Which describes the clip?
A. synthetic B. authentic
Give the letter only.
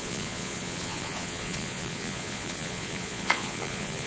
A